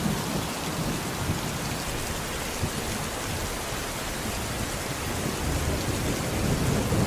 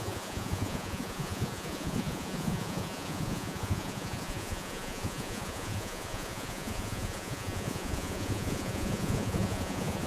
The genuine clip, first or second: first